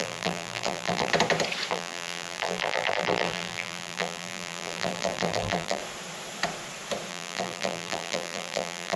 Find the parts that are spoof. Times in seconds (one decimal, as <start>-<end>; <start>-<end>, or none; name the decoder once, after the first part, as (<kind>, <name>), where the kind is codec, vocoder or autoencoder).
0.0-1.1 (vocoder, BigVGAN v2); 1.7-5.8; 7.1-9.0